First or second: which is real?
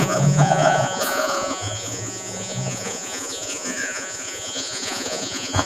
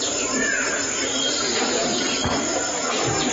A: second